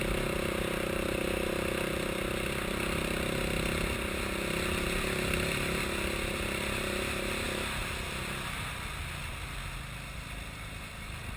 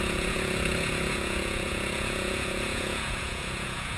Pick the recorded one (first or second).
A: first